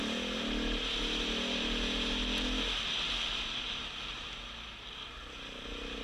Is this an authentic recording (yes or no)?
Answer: yes